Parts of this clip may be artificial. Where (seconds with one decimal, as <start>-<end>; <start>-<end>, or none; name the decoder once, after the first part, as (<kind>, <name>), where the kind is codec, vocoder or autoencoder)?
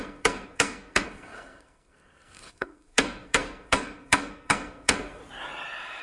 0.0-5.2 (codec, SNAC)